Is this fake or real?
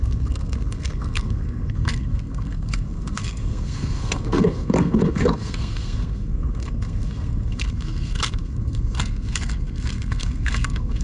fake